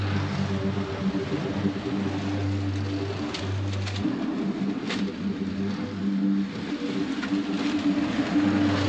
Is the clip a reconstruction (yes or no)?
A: no